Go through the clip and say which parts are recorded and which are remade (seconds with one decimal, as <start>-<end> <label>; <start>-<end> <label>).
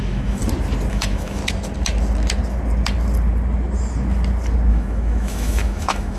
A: 0.0-0.4 remade; 0.4-0.9 recorded; 0.9-1.4 remade; 1.4-4.7 recorded; 4.7-6.2 remade